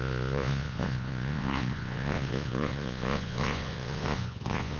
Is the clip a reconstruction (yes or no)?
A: yes